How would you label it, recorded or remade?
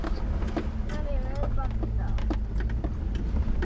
recorded